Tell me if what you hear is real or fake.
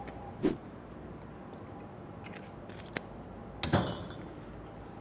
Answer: real